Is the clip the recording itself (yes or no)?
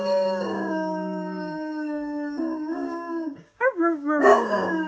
no